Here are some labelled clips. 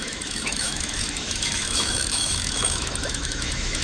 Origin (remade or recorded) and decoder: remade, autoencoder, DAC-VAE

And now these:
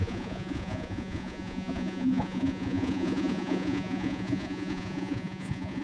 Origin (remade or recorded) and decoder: remade, vocoder, Vocos